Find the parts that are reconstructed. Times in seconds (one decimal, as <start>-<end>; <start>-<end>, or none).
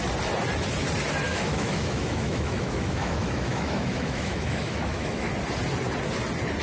1.3-5.3